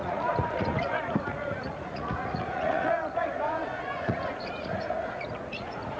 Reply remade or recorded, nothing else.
remade